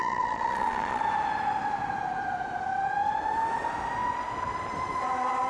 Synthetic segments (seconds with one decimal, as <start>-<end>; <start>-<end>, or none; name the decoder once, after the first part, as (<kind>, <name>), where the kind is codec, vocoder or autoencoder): 0.0-1.0 (vocoder, Vocos)